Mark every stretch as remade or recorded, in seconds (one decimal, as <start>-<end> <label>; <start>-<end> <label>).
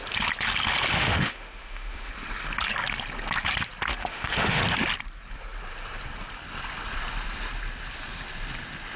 0.0-0.9 recorded; 0.9-2.1 remade; 2.1-3.9 recorded; 3.9-4.6 remade; 4.6-9.0 recorded